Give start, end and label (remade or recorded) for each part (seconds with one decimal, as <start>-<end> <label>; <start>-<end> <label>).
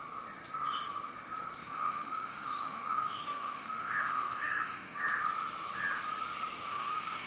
0.0-1.6 recorded; 1.6-5.0 remade; 5.0-6.7 recorded; 6.7-7.3 remade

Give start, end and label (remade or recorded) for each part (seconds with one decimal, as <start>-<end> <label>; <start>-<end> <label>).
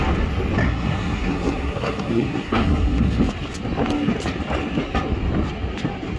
0.0-0.6 recorded; 0.6-3.2 remade; 3.2-6.2 recorded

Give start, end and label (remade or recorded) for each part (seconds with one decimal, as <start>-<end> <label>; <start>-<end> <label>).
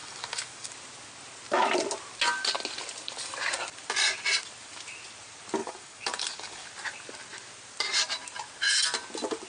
0.0-0.7 remade; 0.7-5.6 recorded; 5.6-6.7 remade; 6.7-9.5 recorded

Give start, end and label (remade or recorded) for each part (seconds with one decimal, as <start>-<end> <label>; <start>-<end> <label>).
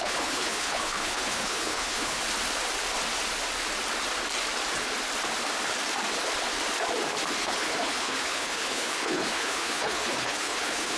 0.0-2.2 remade; 2.2-7.4 recorded; 7.4-11.0 remade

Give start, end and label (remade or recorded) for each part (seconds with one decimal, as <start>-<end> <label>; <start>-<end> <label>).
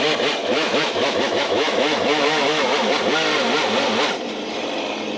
0.0-0.4 recorded; 0.4-2.9 remade; 2.9-5.2 recorded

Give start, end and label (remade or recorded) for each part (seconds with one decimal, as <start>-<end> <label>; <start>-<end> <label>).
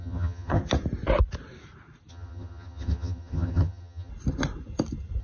0.0-0.6 remade; 0.6-2.1 recorded; 2.1-4.1 remade; 4.1-5.2 recorded